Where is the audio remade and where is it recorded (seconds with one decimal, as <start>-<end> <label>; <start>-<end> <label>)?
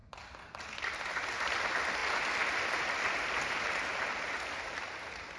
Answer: 0.0-5.4 recorded